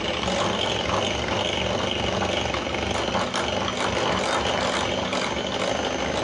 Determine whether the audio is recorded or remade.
recorded